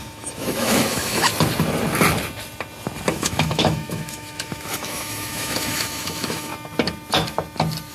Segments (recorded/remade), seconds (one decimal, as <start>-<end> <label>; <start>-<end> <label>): 0.0-1.3 remade; 1.3-3.1 recorded; 3.1-6.5 remade; 6.5-7.9 recorded